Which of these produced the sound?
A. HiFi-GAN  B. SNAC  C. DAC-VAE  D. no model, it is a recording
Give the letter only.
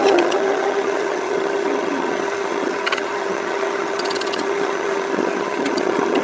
A